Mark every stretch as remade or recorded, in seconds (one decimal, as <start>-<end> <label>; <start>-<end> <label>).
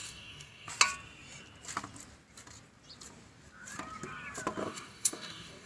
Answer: 0.0-0.7 remade; 0.7-4.6 recorded; 4.6-5.7 remade